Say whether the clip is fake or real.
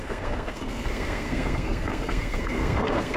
fake